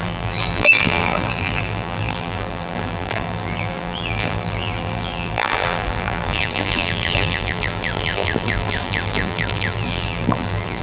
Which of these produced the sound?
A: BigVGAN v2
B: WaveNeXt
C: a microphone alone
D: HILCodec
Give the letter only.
A